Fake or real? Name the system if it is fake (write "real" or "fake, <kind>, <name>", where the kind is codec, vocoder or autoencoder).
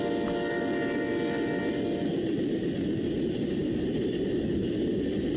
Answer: real